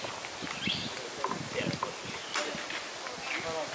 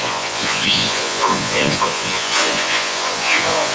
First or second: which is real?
first